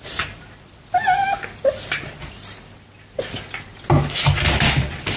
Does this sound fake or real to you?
real